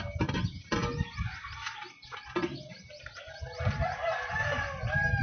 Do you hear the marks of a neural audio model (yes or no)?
no